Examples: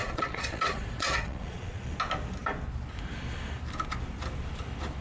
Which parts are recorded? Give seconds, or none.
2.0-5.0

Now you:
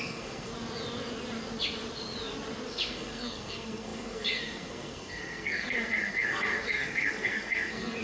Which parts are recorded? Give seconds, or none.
0.5-2.7

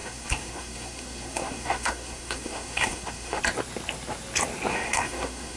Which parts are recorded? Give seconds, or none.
3.4-4.7

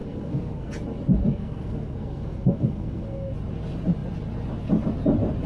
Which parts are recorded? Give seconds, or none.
0.7-1.2; 3.3-5.5

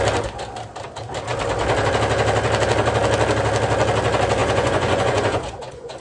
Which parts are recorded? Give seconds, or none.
0.0-4.4